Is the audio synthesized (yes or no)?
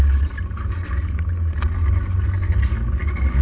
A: no